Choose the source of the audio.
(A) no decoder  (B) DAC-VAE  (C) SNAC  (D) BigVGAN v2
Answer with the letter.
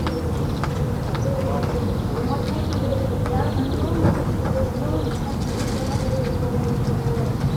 A